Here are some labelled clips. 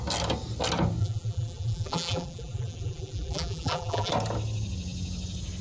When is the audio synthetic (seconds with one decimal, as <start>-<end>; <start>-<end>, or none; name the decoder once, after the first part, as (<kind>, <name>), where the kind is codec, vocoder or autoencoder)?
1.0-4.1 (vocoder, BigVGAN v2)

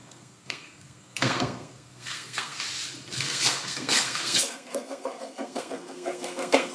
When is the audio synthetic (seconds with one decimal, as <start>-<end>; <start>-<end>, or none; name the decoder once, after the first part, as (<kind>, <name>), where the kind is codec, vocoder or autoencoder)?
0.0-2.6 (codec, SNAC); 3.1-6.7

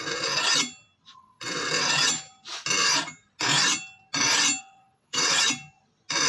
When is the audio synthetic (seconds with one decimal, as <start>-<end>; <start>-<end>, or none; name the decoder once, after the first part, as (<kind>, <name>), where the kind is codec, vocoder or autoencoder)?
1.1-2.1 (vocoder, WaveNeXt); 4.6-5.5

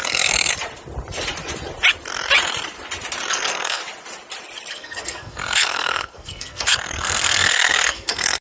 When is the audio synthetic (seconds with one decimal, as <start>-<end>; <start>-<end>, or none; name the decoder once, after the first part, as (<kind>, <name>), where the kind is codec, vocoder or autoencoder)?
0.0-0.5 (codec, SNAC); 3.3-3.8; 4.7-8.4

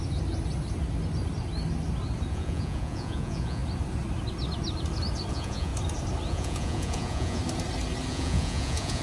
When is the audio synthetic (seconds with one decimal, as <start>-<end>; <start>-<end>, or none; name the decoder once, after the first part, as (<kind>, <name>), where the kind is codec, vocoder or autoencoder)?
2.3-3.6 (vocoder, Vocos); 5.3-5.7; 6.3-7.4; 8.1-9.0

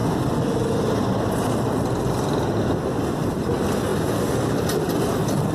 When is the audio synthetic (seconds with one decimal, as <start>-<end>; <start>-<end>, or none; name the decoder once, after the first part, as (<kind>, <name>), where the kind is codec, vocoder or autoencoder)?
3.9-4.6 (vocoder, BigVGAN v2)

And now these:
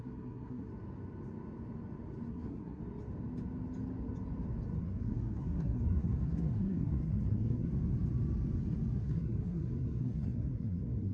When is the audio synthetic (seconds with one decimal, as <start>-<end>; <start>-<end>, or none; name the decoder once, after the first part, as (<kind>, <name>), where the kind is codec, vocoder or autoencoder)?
0.0-0.7 (codec, SNAC); 2.3-2.8; 4.8-7.7; 9.0-11.1